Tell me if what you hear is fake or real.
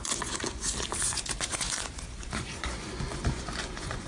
fake